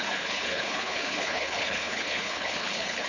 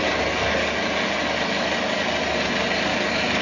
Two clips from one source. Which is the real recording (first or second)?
second